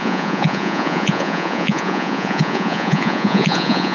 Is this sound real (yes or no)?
no